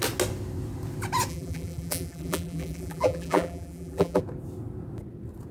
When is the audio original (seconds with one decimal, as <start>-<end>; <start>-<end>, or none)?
0.0-1.3; 4.2-5.5